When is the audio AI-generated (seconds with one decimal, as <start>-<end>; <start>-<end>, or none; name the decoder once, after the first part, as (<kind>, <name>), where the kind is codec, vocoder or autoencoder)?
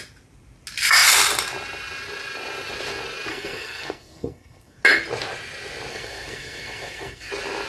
3.3-4.8 (codec, SNAC); 5.9-7.3